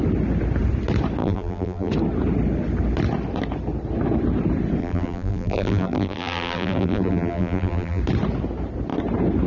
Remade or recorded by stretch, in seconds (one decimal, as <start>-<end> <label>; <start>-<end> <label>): 0.0-1.2 recorded; 1.2-1.9 remade; 1.9-4.8 recorded; 4.8-8.0 remade; 8.0-9.5 recorded